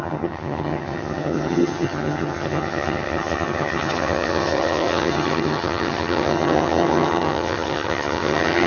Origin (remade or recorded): remade